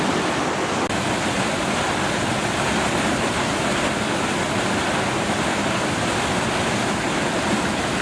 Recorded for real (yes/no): yes